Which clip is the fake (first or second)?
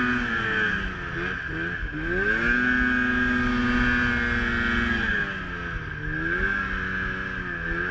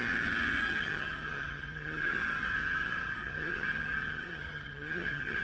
second